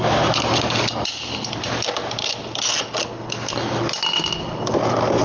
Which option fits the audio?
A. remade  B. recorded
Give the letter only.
B